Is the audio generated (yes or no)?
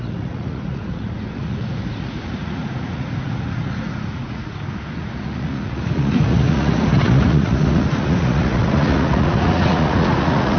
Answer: yes